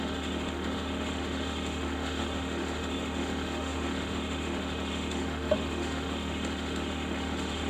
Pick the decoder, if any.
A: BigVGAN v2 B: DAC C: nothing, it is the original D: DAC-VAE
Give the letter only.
D